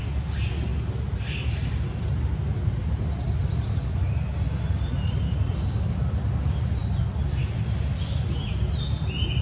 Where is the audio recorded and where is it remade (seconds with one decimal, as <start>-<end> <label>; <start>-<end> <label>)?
0.0-9.4 recorded

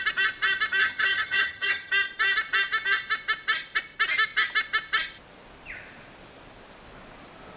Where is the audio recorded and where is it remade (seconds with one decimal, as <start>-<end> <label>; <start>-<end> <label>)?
0.0-0.8 recorded; 0.8-1.9 remade; 1.9-7.6 recorded

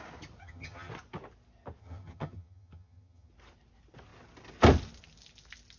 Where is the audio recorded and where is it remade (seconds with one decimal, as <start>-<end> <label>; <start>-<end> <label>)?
0.0-0.4 recorded; 0.4-0.9 remade; 0.9-1.8 recorded; 1.8-3.3 remade; 3.3-5.8 recorded

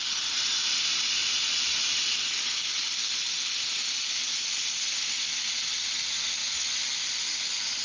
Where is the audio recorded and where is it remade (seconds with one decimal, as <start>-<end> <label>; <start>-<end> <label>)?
0.0-7.8 recorded

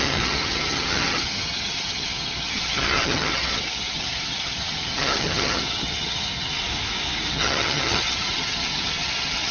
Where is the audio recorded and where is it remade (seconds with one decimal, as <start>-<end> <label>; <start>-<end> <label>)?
0.0-6.6 remade; 6.6-7.3 recorded; 7.3-9.5 remade

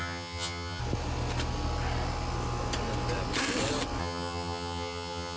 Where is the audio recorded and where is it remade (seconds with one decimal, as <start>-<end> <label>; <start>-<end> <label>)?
0.0-0.8 remade; 0.8-4.0 recorded; 4.0-5.4 remade